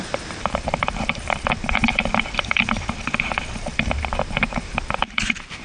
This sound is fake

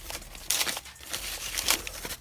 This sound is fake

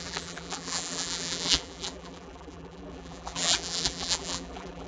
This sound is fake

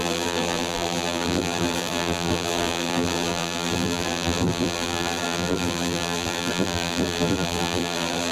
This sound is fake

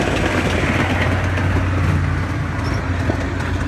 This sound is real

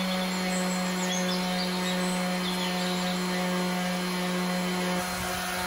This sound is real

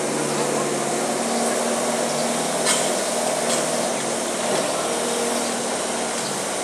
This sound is real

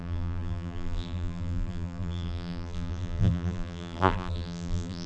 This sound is fake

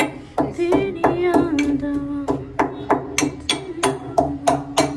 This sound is real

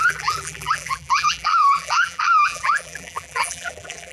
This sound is fake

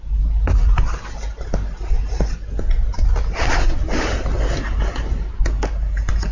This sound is real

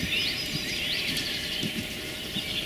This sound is fake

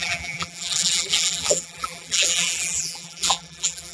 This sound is fake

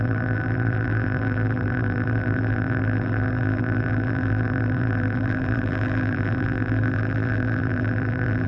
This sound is fake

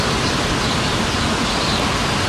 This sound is real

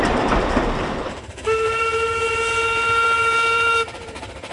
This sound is fake